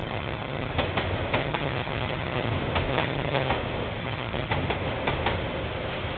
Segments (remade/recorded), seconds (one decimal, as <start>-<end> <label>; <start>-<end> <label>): 0.0-0.7 remade; 0.7-1.4 recorded; 1.4-2.5 remade; 2.5-2.9 recorded; 2.9-3.5 remade; 3.5-4.0 recorded; 4.0-4.5 remade; 4.5-6.2 recorded